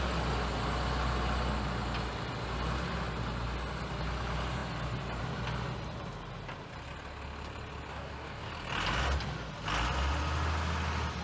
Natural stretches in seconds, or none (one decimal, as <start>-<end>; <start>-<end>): 0.0-7.9; 8.5-11.2